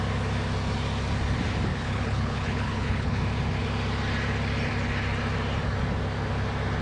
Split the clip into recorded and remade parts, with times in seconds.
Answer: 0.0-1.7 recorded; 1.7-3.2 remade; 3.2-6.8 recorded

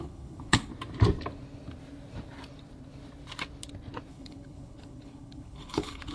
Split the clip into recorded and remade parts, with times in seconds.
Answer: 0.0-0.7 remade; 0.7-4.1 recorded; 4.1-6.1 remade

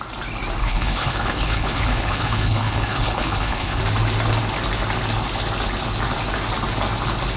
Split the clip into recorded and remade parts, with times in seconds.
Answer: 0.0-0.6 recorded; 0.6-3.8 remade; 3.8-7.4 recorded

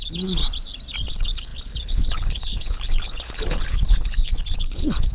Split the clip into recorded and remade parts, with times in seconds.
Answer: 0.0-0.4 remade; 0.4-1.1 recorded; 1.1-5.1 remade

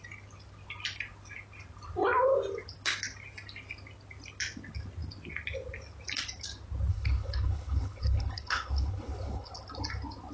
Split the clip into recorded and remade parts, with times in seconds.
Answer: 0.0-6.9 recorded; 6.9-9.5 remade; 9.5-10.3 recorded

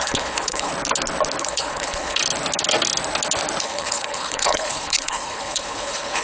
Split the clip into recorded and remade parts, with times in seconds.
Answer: 0.0-0.7 remade; 0.7-1.4 recorded; 1.4-2.2 remade; 2.2-3.6 recorded; 3.6-6.2 remade